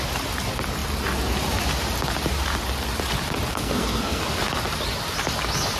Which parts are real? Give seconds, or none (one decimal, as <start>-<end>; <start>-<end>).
0.0-3.5; 4.2-5.8